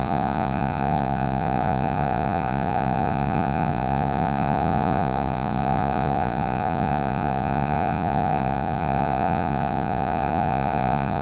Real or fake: fake